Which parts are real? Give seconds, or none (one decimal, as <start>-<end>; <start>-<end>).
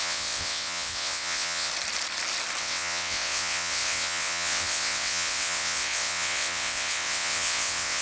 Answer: 1.7-2.6